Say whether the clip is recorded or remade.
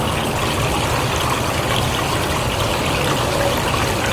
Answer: recorded